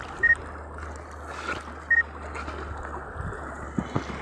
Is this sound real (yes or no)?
yes